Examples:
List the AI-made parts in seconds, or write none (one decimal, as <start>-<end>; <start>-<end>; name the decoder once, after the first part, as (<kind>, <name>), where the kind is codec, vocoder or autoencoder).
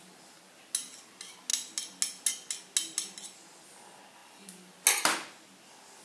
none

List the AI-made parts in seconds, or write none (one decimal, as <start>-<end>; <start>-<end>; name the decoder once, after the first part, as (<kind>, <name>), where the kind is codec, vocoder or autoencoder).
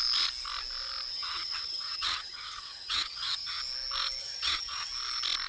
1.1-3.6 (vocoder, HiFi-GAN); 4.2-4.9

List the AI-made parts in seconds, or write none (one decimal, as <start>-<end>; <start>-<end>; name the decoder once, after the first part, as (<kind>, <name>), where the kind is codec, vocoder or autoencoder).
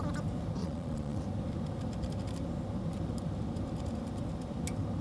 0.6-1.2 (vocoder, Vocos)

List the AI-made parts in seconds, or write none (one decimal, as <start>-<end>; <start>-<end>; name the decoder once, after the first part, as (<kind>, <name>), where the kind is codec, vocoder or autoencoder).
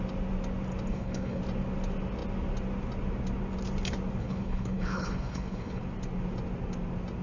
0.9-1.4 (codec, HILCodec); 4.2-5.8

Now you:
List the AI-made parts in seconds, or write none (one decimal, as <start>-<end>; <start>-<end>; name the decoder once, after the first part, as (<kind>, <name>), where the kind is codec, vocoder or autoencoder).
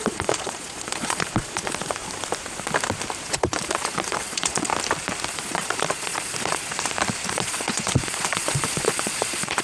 0.0-2.0 (vocoder, Vocos); 3.2-4.7; 5.3-6.7; 7.3-9.6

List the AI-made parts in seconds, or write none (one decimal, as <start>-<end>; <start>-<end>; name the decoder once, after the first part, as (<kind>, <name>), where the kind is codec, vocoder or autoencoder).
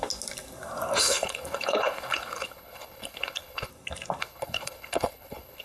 1.0-3.7 (codec, HILCodec); 4.2-5.6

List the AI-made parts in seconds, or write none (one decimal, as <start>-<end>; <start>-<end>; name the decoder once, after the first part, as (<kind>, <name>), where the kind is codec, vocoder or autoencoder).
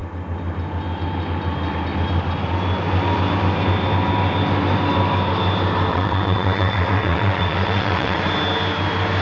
5.9-8.2 (vocoder, WaveNeXt)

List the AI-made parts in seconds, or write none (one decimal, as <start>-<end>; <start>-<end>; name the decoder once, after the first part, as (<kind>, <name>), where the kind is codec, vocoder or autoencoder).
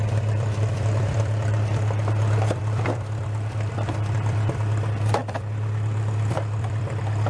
0.0-7.3 (vocoder, BigVGAN v2)